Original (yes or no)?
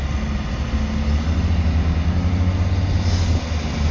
yes